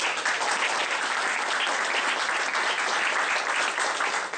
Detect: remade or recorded recorded